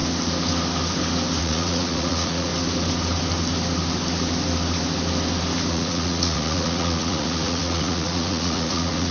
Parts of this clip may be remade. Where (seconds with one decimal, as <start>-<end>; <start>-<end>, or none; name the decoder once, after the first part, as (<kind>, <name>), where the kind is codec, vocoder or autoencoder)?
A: 1.4-2.5 (vocoder, Vocos); 5.7-9.1